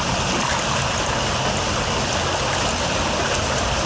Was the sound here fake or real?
real